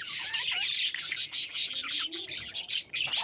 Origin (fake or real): real